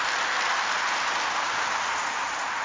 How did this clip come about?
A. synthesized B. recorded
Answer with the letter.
B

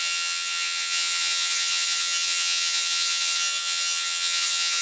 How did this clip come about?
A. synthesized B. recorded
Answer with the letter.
A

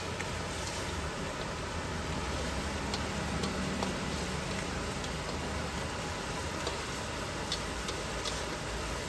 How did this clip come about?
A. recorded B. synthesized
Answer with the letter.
A